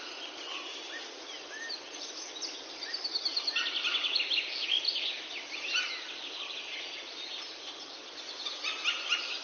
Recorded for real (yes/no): yes